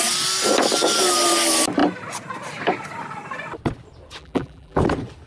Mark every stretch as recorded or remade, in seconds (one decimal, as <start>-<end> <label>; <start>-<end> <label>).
0.0-4.2 recorded; 4.2-4.8 remade; 4.8-5.3 recorded